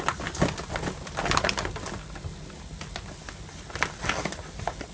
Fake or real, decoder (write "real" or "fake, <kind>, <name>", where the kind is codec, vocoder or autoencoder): real